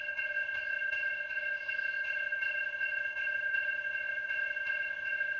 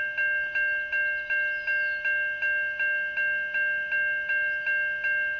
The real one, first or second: second